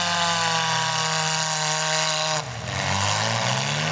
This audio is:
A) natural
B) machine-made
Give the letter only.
A